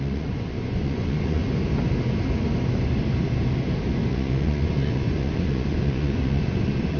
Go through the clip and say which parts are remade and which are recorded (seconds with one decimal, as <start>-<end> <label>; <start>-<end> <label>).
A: 0.0-1.4 remade; 1.4-4.1 recorded; 4.1-7.0 remade